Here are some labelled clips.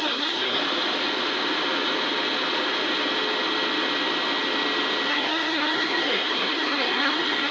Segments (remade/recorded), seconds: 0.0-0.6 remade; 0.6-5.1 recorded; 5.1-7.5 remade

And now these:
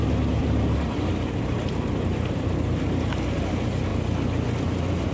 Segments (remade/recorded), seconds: 0.0-0.4 recorded; 0.4-3.5 remade; 3.5-5.1 recorded

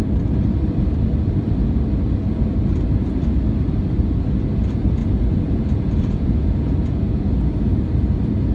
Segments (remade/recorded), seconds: 0.0-5.0 recorded; 5.0-7.3 remade; 7.3-8.5 recorded

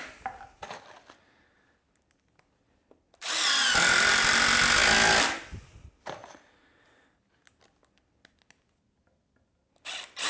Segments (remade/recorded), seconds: 0.0-10.3 recorded

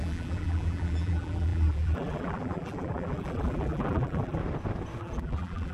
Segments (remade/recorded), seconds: 0.0-4.4 remade; 4.4-5.0 recorded; 5.0-5.7 remade